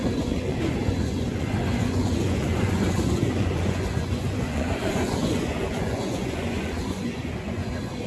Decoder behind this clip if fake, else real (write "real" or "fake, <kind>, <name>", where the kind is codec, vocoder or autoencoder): fake, vocoder, Vocos